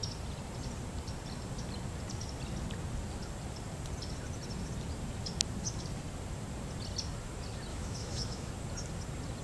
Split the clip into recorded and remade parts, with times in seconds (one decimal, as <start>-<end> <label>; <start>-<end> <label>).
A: 0.0-7.7 recorded; 7.7-8.5 remade; 8.5-9.4 recorded